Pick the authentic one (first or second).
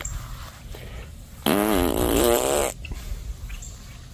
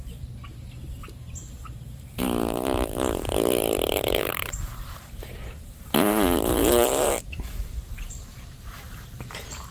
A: first